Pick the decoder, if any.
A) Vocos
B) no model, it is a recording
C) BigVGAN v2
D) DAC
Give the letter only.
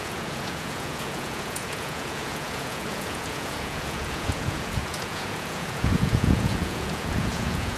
A